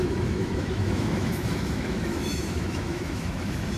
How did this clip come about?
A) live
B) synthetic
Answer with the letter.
B